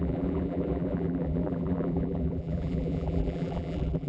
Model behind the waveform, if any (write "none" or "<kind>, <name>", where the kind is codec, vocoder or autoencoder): vocoder, BigVGAN v2